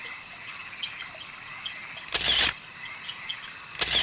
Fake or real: real